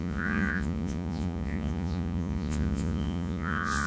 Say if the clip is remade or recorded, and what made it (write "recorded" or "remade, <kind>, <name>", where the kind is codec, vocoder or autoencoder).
remade, vocoder, Vocos